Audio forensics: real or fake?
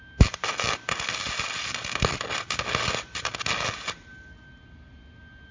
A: real